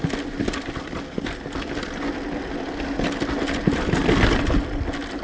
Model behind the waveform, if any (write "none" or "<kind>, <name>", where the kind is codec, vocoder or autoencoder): none